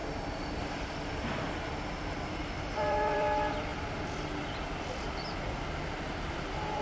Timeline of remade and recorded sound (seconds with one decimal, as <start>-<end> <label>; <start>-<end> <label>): 0.0-6.8 remade